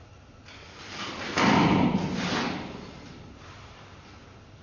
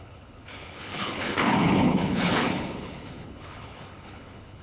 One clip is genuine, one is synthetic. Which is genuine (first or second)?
first